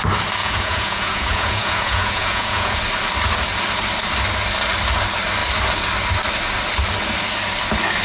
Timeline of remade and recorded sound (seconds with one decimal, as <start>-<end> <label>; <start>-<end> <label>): 0.0-0.4 recorded; 0.4-2.8 remade; 2.8-8.0 recorded